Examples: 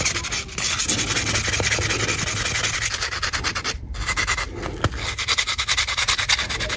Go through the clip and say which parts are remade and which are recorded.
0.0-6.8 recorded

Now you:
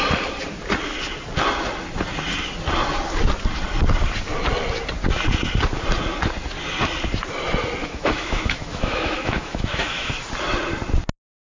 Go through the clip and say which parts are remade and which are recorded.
0.0-7.8 recorded; 7.8-10.1 remade; 10.1-11.4 recorded

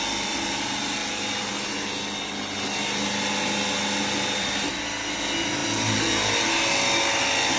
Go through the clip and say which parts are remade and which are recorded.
0.0-7.6 recorded

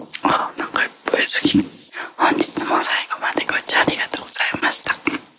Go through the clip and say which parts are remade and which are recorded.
0.0-5.4 recorded

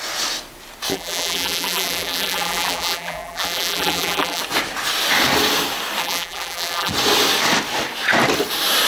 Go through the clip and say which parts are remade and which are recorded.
0.0-0.9 recorded; 0.9-4.4 remade; 4.4-6.0 recorded; 6.0-6.9 remade; 6.9-8.9 recorded

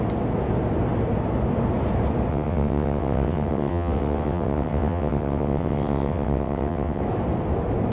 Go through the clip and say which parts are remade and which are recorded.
0.0-2.3 recorded; 2.3-7.0 remade; 7.0-7.9 recorded